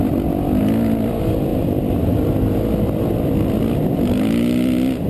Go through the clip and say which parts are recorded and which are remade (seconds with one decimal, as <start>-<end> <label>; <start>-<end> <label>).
0.0-5.1 recorded